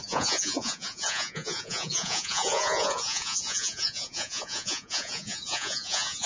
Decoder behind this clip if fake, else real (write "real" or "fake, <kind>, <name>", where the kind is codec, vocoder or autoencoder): fake, vocoder, Vocos